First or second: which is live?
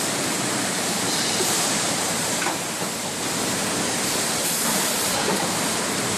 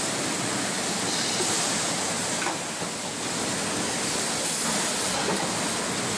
second